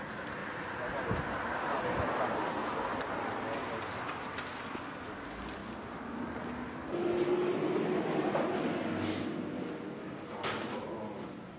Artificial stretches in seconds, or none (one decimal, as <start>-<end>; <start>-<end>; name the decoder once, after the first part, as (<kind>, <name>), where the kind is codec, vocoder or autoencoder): none